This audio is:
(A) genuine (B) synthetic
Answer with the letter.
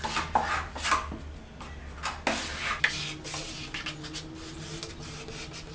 A